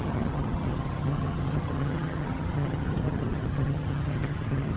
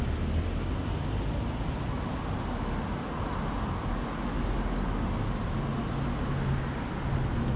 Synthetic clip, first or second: first